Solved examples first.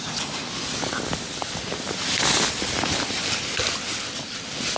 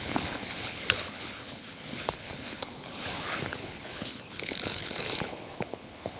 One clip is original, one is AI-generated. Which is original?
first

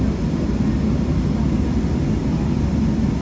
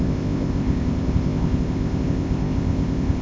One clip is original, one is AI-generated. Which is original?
first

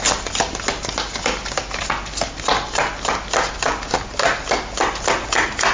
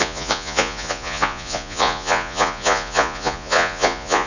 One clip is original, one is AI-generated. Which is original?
first